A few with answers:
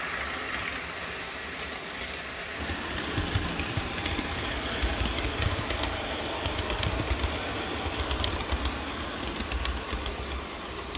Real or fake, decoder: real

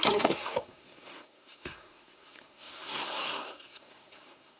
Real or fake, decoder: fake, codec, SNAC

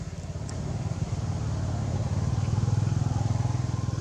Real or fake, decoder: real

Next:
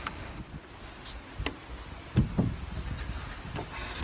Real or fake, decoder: real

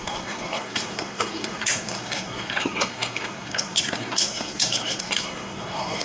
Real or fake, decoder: fake, codec, SNAC